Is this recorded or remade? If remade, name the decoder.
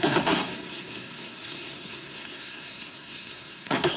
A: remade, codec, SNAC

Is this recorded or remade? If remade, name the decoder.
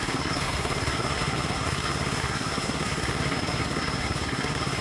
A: remade, codec, SNAC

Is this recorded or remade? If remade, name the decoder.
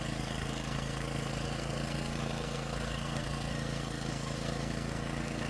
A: remade, codec, SNAC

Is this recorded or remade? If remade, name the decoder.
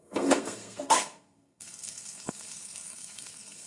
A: remade, codec, SNAC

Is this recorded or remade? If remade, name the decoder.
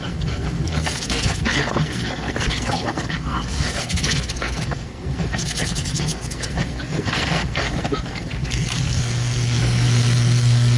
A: remade, codec, SNAC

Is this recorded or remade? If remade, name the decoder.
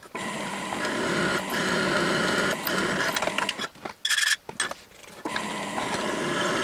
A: recorded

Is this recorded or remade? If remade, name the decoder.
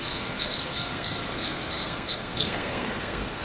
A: remade, codec, SNAC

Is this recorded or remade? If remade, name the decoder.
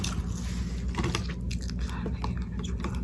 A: recorded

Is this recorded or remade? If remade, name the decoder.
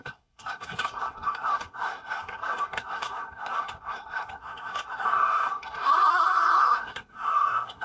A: remade, codec, SNAC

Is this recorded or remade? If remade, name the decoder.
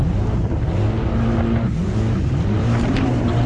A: recorded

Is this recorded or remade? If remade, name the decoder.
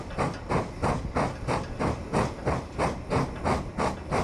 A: recorded